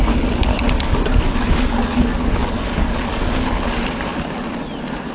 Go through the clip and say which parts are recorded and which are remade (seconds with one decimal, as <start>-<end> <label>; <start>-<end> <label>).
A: 0.0-0.5 recorded; 0.5-3.6 remade; 3.6-5.1 recorded